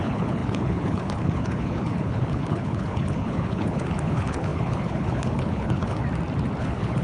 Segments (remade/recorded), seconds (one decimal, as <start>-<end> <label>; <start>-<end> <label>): 0.0-6.0 remade; 6.0-6.6 recorded; 6.6-7.0 remade